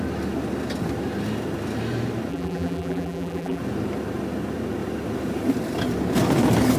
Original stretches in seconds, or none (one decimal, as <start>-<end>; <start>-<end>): 0.0-2.3; 3.6-6.8